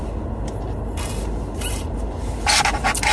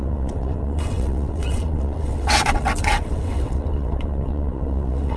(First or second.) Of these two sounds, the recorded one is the first